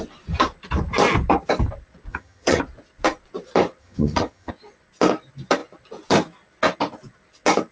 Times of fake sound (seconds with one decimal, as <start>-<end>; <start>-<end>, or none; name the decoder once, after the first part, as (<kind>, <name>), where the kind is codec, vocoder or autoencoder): 2.1-2.6 (vocoder, HiFi-GAN); 3.8-4.5